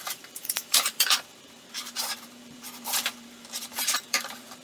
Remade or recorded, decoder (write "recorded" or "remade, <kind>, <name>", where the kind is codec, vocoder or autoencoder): remade, vocoder, BigVGAN v2